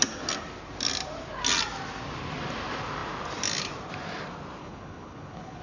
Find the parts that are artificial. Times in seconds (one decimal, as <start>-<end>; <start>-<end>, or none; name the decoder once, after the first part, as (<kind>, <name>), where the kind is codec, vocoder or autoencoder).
4.6-5.6 (codec, HILCodec)

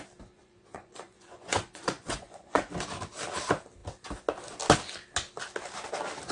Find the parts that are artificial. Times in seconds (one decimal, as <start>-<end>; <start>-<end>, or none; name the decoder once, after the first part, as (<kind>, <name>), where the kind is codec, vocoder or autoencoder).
0.4-2.7 (vocoder, Vocos)

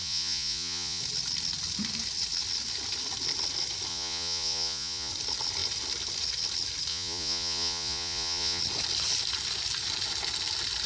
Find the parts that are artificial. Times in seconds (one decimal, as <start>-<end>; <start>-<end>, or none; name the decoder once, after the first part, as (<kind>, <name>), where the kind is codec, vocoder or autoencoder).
0.0-1.0 (vocoder, Vocos); 3.9-5.1; 6.9-8.6

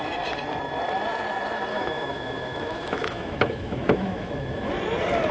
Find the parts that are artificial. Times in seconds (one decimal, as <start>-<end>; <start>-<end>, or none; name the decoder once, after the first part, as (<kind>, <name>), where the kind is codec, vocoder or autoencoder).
1.7-4.7 (autoencoder, DAC-VAE)

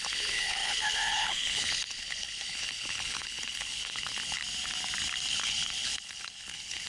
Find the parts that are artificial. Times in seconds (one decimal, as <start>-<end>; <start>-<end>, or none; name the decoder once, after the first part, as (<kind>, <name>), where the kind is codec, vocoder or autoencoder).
0.0-4.4 (codec, HILCodec); 5.3-6.9

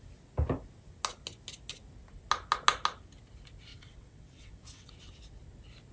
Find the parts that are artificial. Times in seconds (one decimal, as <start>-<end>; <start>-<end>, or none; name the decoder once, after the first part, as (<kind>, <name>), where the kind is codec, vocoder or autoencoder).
3.7-4.9 (vocoder, WaveNeXt)